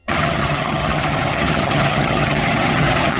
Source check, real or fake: fake